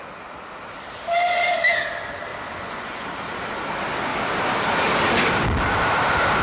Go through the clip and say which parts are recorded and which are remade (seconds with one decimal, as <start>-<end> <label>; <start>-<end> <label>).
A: 0.0-2.3 recorded; 2.3-3.1 remade; 3.1-6.4 recorded